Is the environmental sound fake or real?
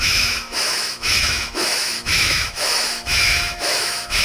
fake